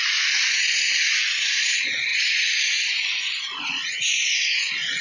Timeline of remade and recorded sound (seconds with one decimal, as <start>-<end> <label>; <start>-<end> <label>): 0.0-5.0 remade